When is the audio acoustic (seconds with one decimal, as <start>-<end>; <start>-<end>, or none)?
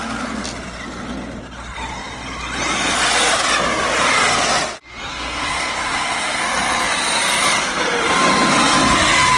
0.0-5.1; 6.4-9.4